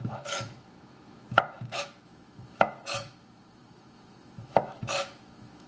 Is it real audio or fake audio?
fake